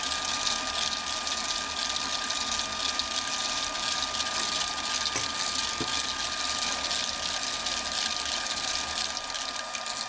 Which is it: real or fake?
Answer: real